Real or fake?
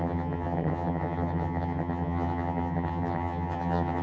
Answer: fake